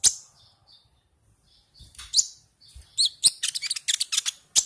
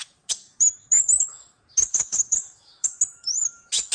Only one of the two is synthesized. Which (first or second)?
second